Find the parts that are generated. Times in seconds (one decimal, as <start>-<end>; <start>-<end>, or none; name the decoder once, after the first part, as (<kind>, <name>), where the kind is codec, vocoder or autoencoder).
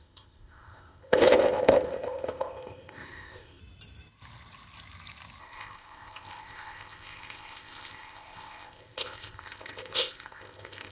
0.0-3.6 (codec, ZipCodec); 5.4-10.9